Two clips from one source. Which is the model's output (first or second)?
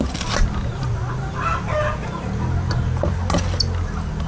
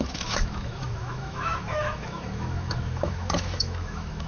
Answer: second